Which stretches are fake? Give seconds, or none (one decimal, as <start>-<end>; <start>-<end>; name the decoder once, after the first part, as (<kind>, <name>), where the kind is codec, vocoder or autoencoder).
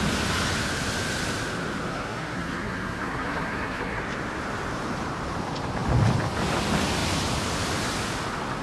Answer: 1.9-4.0 (codec, SNAC)